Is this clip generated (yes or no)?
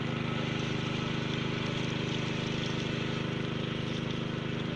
no